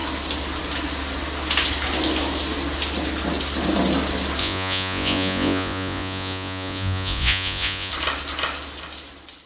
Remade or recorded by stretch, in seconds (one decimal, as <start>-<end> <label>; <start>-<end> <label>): 0.0-4.4 recorded; 4.4-7.9 remade; 7.9-9.5 recorded